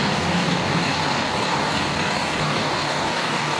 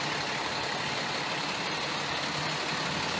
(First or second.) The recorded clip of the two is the second